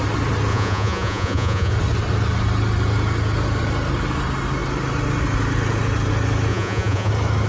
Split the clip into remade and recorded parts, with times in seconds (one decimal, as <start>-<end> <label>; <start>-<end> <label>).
0.0-0.5 recorded; 0.5-1.7 remade; 1.7-6.5 recorded; 6.5-7.1 remade; 7.1-7.5 recorded